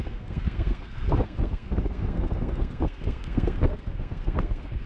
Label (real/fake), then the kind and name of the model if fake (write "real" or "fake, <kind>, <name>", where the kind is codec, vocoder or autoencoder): fake, codec, SNAC